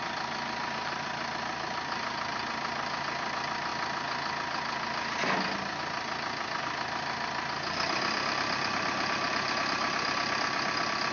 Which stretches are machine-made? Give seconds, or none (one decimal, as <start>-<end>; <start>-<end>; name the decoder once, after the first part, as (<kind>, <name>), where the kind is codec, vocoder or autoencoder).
none